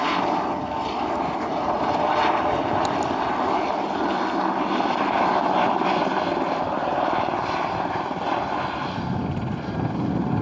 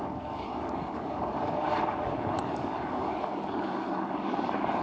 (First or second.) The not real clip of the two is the second